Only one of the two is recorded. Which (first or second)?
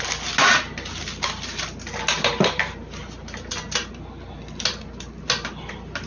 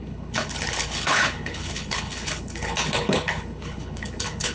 first